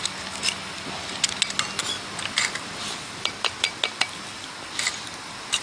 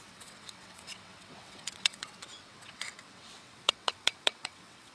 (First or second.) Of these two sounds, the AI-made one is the second